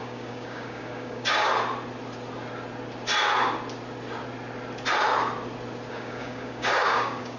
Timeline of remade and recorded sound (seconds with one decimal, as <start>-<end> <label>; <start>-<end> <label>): 0.0-1.5 remade; 1.5-5.9 recorded; 5.9-7.4 remade